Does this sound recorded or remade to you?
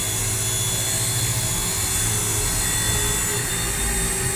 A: recorded